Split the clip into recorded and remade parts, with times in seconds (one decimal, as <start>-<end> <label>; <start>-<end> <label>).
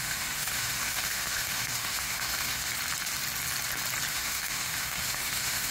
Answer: 0.0-2.7 remade; 2.7-4.1 recorded; 4.1-5.7 remade